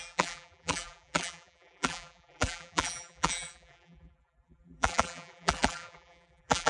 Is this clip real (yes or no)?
no